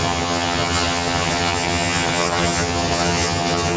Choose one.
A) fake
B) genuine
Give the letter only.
A